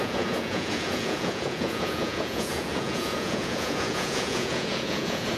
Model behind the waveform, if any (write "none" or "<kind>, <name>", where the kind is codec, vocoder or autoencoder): vocoder, Vocos